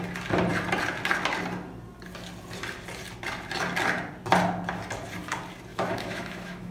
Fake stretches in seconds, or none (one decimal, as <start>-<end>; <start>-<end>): 5.7-6.7